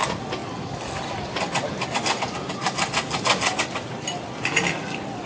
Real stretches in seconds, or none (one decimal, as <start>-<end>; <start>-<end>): 0.0-5.3